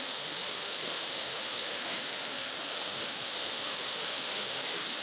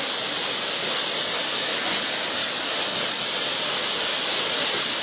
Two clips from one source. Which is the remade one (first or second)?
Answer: first